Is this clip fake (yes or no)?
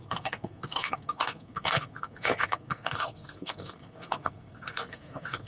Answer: yes